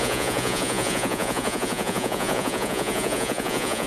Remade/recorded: remade